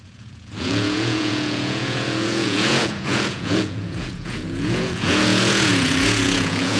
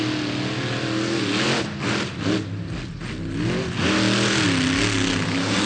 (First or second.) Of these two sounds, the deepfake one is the first